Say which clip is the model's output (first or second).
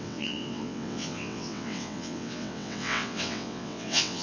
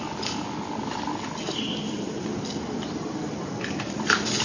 first